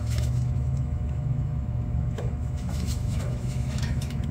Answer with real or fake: fake